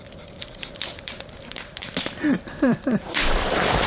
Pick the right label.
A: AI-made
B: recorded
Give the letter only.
A